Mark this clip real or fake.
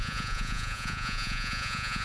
fake